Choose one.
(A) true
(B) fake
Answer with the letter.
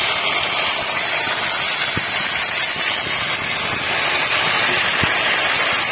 A